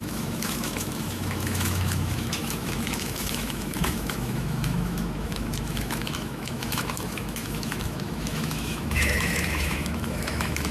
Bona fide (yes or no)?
no